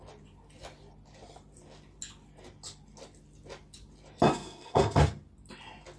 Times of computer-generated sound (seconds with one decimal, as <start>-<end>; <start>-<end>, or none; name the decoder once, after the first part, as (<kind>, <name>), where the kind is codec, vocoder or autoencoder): 4.3-5.0 (codec, SNAC)